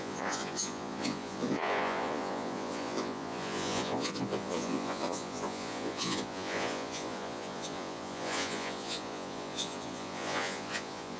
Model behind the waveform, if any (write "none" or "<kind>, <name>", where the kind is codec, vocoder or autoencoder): vocoder, Vocos